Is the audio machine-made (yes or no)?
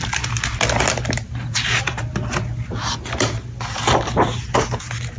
no